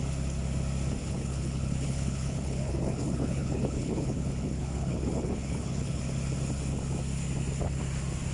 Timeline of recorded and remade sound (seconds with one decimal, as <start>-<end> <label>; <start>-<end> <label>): 0.0-1.0 recorded; 1.0-6.0 remade; 6.0-8.3 recorded